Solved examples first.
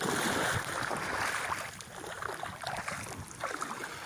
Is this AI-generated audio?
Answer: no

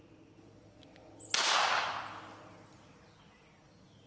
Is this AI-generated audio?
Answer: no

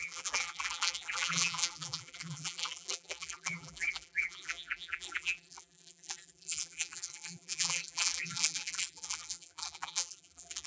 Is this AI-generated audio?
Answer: yes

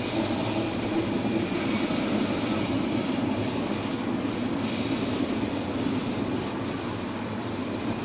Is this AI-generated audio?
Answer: no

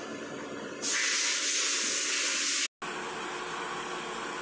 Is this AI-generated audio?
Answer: no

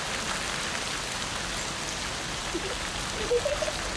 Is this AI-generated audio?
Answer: no